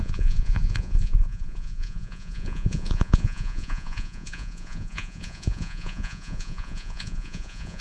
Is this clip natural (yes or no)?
no